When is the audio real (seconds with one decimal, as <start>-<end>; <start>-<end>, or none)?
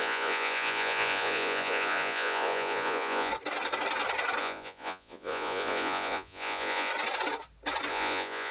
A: 3.3-4.4; 6.9-7.9